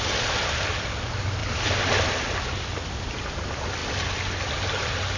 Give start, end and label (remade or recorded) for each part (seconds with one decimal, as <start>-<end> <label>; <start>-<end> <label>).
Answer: 0.0-5.2 recorded